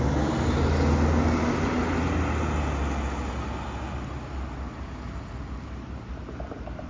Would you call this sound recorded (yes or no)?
yes